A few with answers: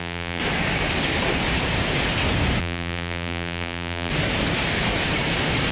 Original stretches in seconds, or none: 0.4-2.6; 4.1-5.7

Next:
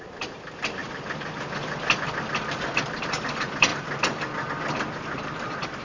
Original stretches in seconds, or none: 0.8-2.7; 3.7-4.5

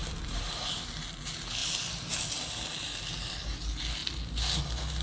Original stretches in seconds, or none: 0.8-1.6; 2.7-4.0; 4.6-5.0

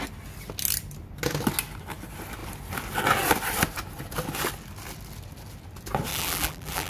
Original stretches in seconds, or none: 0.0-6.1